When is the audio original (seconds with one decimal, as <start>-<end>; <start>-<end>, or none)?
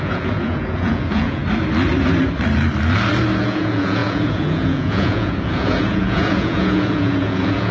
1.4-3.4